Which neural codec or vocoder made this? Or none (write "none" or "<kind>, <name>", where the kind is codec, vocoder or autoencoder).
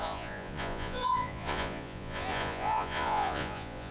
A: vocoder, Vocos